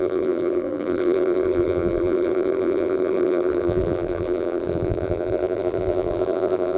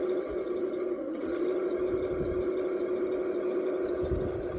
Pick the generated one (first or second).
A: first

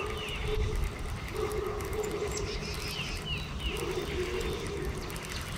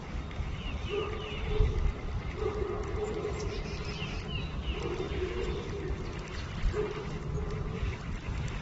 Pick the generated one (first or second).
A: second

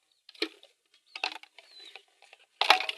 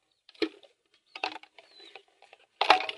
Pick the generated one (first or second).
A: second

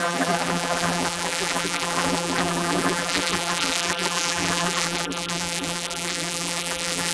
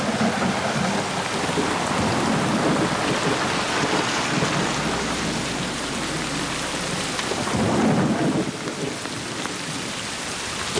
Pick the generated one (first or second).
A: first